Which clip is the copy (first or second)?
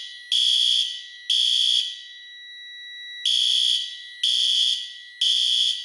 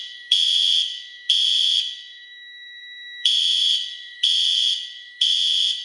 second